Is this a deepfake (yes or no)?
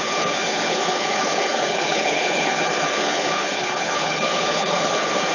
yes